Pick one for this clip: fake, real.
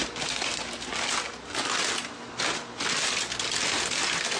real